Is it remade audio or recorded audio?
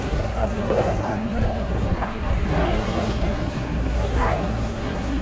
remade